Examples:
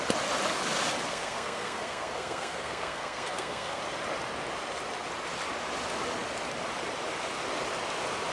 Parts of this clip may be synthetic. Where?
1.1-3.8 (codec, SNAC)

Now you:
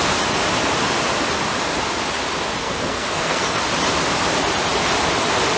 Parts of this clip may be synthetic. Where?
2.6-3.6 (codec, SNAC)

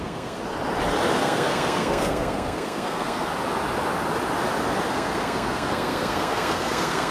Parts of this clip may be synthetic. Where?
0.0-0.4 (codec, SNAC); 1.2-3.3; 4.9-7.1